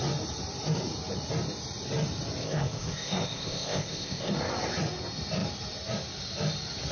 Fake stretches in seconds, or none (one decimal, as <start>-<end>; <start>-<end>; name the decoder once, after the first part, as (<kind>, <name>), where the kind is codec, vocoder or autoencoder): 2.4-4.3 (codec, ZipCodec)